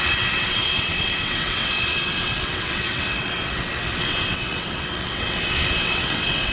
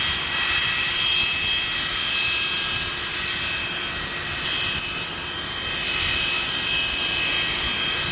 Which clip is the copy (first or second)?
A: first